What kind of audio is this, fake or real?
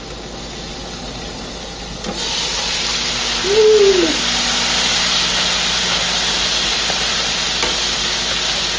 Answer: real